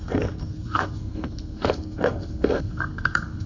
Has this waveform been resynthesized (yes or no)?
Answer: yes